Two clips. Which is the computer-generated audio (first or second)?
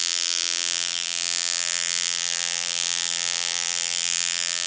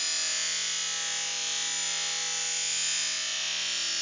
first